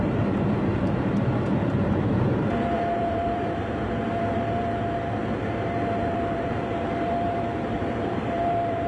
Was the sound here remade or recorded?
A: remade